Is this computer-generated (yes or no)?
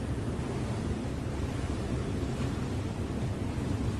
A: no